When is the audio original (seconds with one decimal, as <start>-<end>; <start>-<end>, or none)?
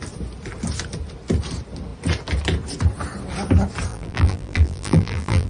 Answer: 0.0-3.9